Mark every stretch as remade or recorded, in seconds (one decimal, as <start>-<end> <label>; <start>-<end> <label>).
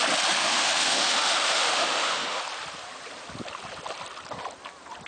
0.0-0.4 recorded; 0.4-2.4 remade; 2.4-5.1 recorded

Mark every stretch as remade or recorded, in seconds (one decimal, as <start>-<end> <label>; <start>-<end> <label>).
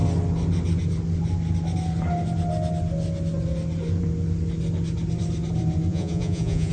0.0-5.9 recorded; 5.9-6.7 remade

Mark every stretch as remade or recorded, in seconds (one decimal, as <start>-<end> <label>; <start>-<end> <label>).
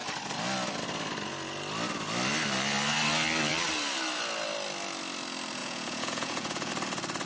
0.0-5.6 recorded; 5.6-6.7 remade; 6.7-7.3 recorded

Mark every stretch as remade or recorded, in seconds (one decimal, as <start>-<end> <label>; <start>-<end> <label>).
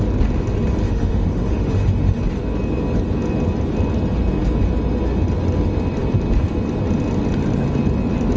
0.0-0.8 recorded; 0.8-2.2 remade; 2.2-8.4 recorded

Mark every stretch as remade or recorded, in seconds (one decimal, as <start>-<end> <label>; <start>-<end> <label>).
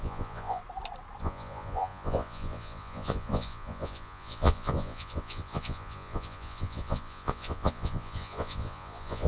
0.0-0.6 remade; 0.6-1.2 recorded; 1.2-9.3 remade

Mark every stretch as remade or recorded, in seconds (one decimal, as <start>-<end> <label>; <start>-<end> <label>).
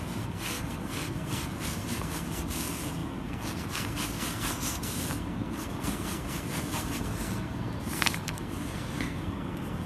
0.0-9.9 remade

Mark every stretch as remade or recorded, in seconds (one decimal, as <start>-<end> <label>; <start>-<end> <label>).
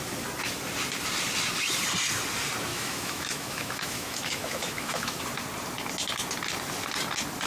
0.0-2.7 recorded; 2.7-5.2 remade; 5.2-7.5 recorded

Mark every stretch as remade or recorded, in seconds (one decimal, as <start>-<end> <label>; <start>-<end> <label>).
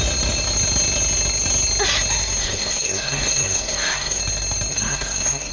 0.0-2.4 recorded; 2.4-4.2 remade; 4.2-4.7 recorded; 4.7-5.5 remade